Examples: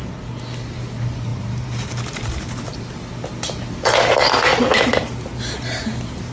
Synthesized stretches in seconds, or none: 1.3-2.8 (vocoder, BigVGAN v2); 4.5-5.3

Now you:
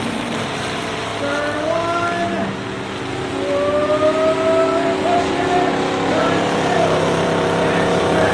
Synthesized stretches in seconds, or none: 0.0-1.1 (vocoder, BigVGAN v2); 6.1-8.3